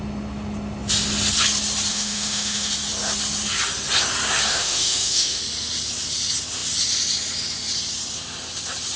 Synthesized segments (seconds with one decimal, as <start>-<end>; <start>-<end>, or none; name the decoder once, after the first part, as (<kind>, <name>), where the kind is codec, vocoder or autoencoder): 1.9-2.7 (autoencoder, DAC-VAE); 4.5-5.4

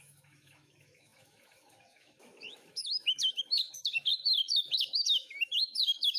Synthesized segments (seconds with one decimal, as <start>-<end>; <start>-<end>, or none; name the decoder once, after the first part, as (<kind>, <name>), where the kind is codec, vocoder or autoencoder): 0.0-6.2 (autoencoder, DAC-VAE)

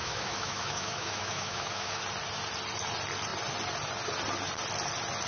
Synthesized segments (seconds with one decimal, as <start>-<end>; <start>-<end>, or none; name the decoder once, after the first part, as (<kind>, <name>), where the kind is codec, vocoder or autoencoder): 0.0-2.0 (autoencoder, DAC-VAE)

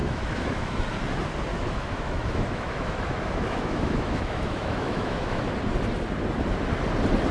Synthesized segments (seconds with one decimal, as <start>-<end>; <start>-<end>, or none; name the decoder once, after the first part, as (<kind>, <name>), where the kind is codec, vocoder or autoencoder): 0.0-0.8 (autoencoder, DAC-VAE); 1.5-5.4

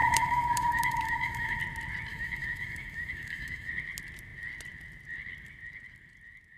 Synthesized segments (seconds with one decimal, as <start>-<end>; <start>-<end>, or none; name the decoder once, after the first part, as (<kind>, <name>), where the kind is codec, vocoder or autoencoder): 0.0-1.6 (autoencoder, DAC-VAE); 2.1-3.7

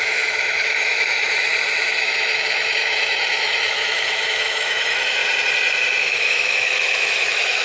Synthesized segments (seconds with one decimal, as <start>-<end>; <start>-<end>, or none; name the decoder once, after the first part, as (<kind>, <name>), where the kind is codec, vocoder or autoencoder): 0.0-1.5 (autoencoder, DAC-VAE); 2.0-5.2; 6.0-7.6